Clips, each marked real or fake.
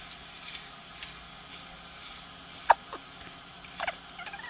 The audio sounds real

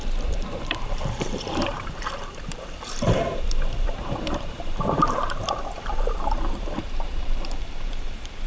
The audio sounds fake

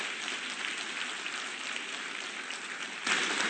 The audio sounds real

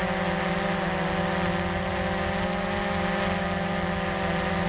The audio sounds real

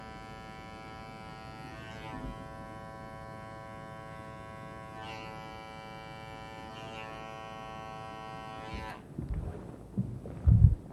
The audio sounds real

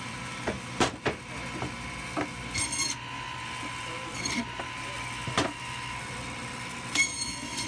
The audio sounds real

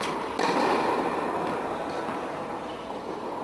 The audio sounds real